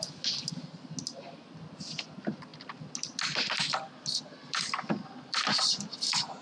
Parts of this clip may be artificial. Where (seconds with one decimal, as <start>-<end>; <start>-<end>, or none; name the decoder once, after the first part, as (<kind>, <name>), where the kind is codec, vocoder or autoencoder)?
none